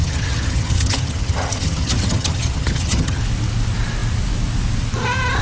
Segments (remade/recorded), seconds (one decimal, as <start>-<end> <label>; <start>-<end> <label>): 0.0-3.2 remade; 3.2-5.4 recorded